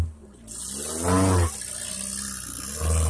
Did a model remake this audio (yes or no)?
no